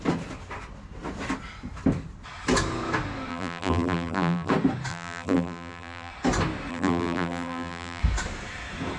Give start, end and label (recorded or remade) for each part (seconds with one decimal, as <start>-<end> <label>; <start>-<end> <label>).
0.0-3.3 recorded; 3.3-4.5 remade; 4.5-4.9 recorded; 4.9-6.1 remade; 6.1-6.7 recorded; 6.7-8.0 remade; 8.0-9.0 recorded